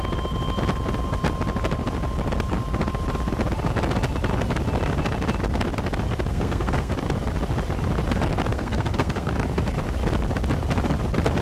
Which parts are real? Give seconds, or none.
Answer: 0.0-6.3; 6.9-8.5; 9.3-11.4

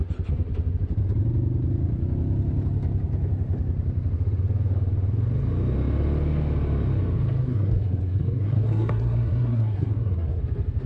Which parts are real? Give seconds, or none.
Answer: 0.0-7.4; 10.4-10.9

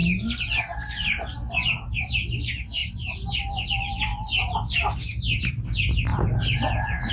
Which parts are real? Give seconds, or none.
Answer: 0.0-7.1

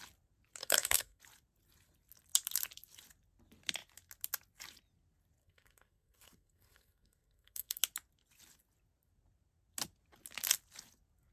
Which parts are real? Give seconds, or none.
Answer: 0.0-0.6; 1.2-5.4; 7.8-11.3

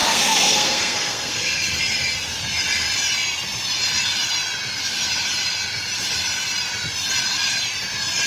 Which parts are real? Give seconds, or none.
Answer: 1.8-8.3